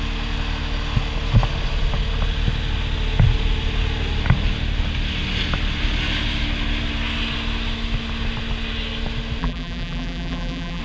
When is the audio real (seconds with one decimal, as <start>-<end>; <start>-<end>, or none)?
0.0-9.4